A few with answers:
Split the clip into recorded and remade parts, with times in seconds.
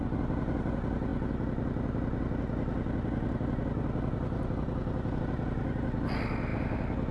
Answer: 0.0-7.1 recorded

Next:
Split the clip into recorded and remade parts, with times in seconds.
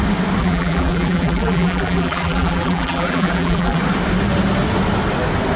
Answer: 0.0-0.4 recorded; 0.4-3.8 remade; 3.8-5.6 recorded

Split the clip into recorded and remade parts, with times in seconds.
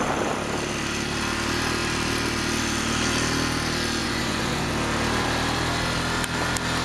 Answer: 0.0-4.0 recorded; 4.0-4.7 remade; 4.7-6.8 recorded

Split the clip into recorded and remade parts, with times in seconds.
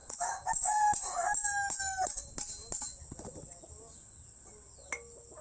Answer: 0.0-2.2 remade; 2.2-5.4 recorded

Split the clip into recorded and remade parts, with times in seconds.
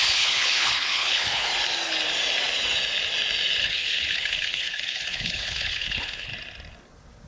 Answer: 0.0-1.5 remade; 1.5-3.6 recorded; 3.6-6.3 remade; 6.3-7.3 recorded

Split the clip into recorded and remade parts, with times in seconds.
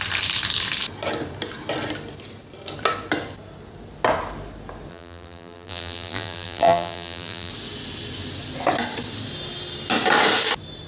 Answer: 0.0-4.9 recorded; 4.9-7.5 remade; 7.5-10.9 recorded